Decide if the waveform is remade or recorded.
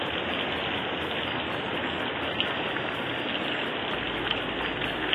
recorded